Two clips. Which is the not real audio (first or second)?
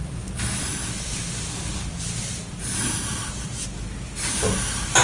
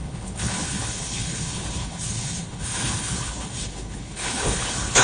second